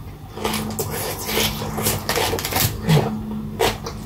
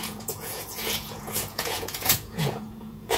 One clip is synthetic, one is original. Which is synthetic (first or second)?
second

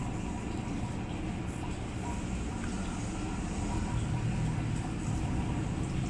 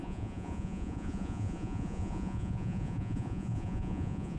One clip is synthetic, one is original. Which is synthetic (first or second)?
second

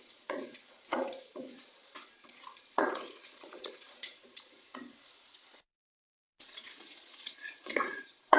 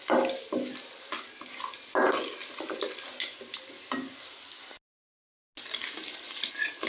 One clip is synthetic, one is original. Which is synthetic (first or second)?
first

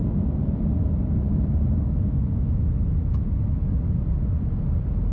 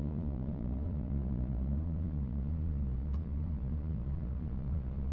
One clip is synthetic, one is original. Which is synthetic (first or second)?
second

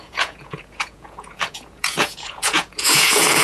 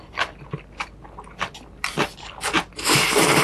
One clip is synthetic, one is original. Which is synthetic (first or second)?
first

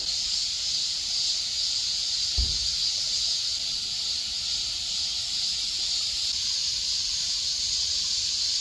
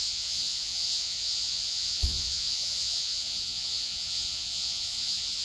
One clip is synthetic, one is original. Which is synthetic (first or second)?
second